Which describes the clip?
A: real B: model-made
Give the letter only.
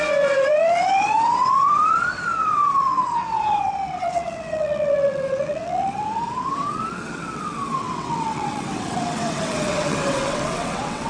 B